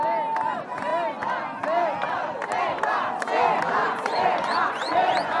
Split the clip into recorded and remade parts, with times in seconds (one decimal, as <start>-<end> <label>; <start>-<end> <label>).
0.0-3.8 recorded; 3.8-5.4 remade